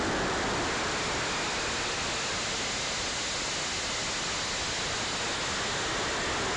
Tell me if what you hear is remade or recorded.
recorded